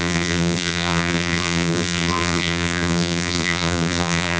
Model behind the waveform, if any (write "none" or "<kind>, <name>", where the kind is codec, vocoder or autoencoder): vocoder, BigVGAN v2